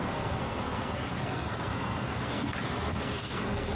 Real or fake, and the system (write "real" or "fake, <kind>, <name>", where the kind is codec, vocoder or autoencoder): fake, codec, SNAC